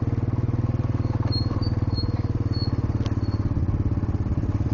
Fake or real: real